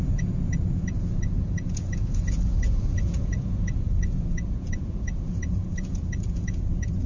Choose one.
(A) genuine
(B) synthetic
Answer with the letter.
B